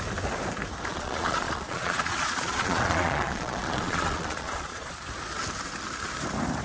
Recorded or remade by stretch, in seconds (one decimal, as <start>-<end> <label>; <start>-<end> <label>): 0.0-0.9 recorded; 0.9-4.9 remade; 4.9-6.6 recorded